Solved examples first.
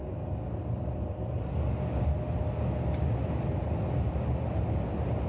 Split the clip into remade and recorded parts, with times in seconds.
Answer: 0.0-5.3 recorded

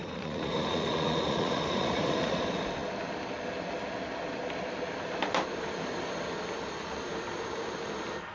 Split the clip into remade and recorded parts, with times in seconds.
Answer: 0.0-2.4 remade; 2.4-8.3 recorded

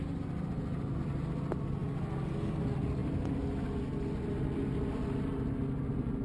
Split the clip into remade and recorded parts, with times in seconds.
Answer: 0.0-6.2 recorded